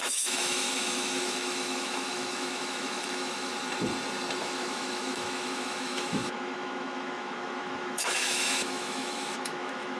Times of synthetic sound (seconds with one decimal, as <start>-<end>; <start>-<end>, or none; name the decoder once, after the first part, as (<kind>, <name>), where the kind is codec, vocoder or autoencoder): 0.0-3.5 (autoencoder, DAC-VAE); 4.4-10.0

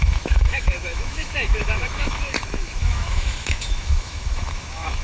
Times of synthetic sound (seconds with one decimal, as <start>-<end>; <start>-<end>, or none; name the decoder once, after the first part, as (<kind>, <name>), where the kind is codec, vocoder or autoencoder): 0.0-5.0 (autoencoder, DAC-VAE)

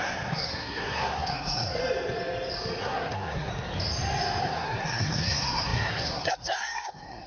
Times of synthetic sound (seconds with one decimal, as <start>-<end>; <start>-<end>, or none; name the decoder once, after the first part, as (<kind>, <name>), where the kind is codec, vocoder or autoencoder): 0.0-1.8 (codec, SNAC); 2.8-3.5; 4.4-7.3

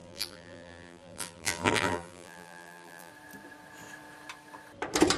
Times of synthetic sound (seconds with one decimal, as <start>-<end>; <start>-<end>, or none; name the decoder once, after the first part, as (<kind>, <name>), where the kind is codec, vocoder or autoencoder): 0.0-3.1 (vocoder, BigVGAN v2)